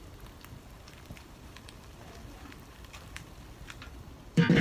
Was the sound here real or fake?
fake